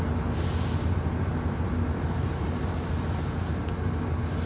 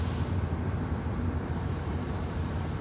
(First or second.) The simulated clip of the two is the second